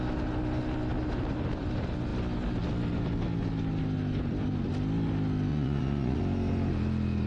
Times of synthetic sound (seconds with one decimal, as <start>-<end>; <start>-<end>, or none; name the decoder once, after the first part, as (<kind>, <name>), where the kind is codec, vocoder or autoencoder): 5.5-6.2 (vocoder, Vocos)